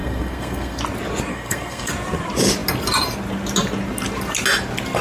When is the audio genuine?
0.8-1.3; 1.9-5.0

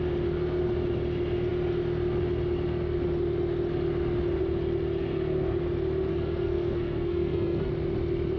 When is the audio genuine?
0.0-6.1; 7.7-8.4